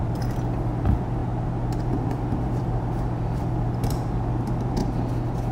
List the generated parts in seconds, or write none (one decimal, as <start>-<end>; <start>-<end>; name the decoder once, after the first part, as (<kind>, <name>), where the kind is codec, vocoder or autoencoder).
0.0-1.2 (vocoder, BigVGAN v2); 1.9-4.8